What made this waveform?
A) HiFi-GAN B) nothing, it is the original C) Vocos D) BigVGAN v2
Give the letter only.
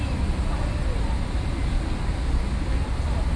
B